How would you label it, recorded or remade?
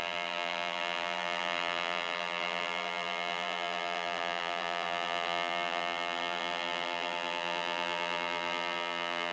remade